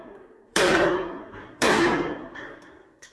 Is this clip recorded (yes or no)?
no